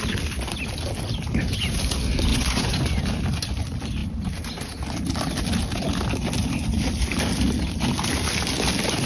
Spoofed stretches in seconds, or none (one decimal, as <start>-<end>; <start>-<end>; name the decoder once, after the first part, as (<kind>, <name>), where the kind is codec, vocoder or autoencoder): 2.3-3.0 (vocoder, Vocos)